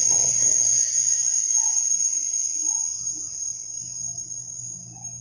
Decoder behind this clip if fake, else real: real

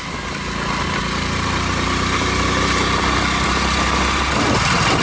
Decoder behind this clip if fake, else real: real